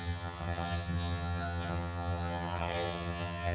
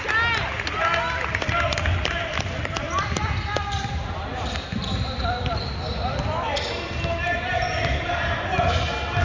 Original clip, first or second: second